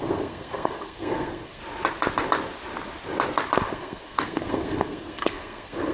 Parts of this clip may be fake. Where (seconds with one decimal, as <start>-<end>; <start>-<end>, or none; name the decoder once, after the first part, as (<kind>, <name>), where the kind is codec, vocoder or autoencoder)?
0.0-1.6 (codec, SNAC); 3.7-5.9